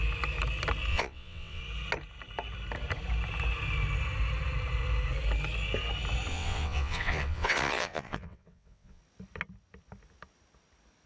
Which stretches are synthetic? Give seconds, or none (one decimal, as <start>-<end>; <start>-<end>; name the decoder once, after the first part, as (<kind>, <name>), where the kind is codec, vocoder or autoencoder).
0.9-1.6 (vocoder, WaveNeXt); 6.3-9.0